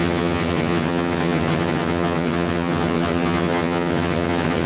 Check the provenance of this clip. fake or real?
fake